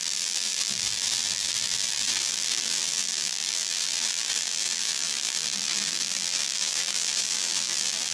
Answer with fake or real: fake